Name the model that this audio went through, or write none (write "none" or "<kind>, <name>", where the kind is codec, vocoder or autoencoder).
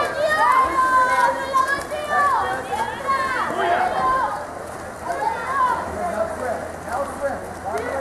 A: none